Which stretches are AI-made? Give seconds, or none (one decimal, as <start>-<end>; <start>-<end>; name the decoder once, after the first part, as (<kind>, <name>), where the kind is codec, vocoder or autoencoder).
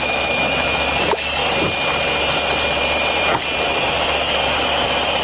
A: 0.0-1.4 (autoencoder, DAC-VAE); 3.7-5.2